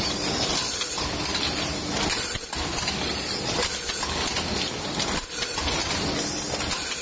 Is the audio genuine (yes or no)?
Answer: yes